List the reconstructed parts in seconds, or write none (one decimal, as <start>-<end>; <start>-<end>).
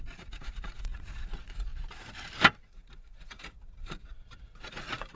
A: 0.0-1.7; 2.6-5.2